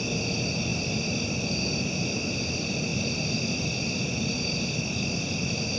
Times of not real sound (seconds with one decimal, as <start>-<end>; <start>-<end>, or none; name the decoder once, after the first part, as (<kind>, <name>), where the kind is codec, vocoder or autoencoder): none